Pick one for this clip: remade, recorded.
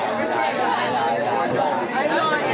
recorded